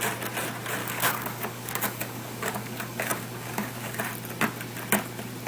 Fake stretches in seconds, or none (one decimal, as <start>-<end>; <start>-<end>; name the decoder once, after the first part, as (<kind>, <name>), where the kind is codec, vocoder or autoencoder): 0.8-4.0 (codec, DAC)